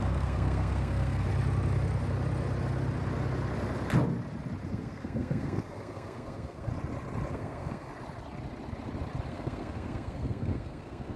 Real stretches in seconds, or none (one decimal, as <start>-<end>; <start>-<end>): 1.3-4.7; 6.7-7.3; 7.9-9.3

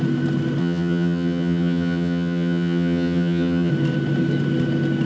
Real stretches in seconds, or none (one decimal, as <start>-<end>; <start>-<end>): 0.0-0.6; 3.7-5.1

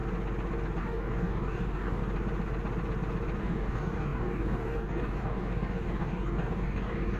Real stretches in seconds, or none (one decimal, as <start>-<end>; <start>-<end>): 0.0-0.8; 2.0-3.4

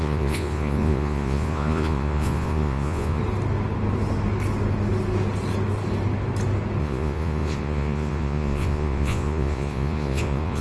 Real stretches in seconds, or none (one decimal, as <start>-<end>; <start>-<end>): 3.2-6.8

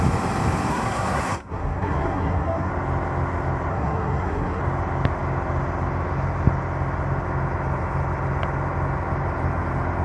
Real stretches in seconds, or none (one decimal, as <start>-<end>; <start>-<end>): 0.0-0.7; 2.7-3.7; 4.6-10.0

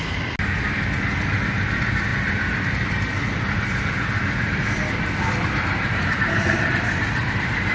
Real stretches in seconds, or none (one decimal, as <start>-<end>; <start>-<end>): 0.0-7.7